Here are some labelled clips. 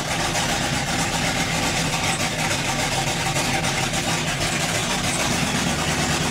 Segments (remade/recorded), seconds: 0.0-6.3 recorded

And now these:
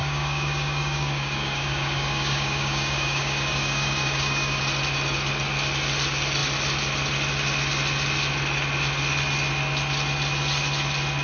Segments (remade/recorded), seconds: 0.0-4.6 remade; 4.6-11.2 recorded

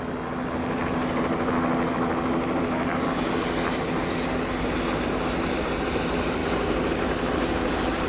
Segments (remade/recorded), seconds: 0.0-8.1 recorded

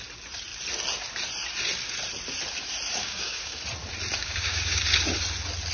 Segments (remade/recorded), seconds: 0.0-3.0 recorded; 3.0-3.6 remade; 3.6-4.2 recorded; 4.2-4.8 remade; 4.8-5.7 recorded

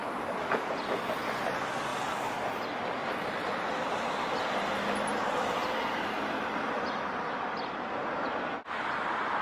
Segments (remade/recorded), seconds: 0.0-0.7 remade; 0.7-9.4 recorded

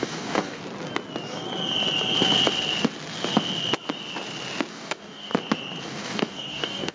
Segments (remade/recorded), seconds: 0.0-0.6 remade; 0.6-4.7 recorded; 4.7-5.3 remade; 5.3-5.8 recorded; 5.8-6.9 remade

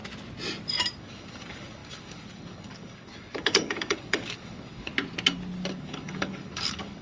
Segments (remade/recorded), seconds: 0.0-1.0 recorded; 1.0-4.9 remade; 4.9-5.7 recorded; 5.7-7.0 remade